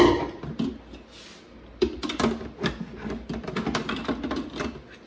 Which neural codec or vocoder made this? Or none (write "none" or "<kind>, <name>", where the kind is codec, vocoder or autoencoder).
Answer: none